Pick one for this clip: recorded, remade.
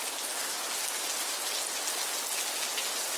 recorded